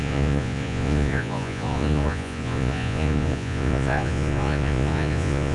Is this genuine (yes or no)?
no